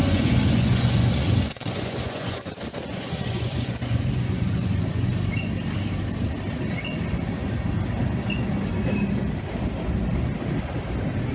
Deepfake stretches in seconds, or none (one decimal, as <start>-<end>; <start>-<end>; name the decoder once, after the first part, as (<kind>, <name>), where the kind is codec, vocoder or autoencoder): 0.0-5.1 (vocoder, Vocos)